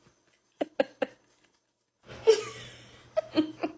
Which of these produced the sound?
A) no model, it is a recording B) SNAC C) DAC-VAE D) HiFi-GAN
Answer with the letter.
A